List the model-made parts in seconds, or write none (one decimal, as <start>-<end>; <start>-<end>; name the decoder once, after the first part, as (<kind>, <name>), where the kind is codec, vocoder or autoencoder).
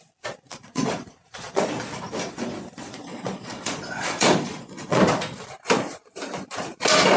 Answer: 0.5-1.8 (vocoder, Vocos); 2.2-5.0